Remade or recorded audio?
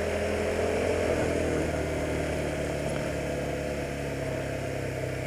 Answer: recorded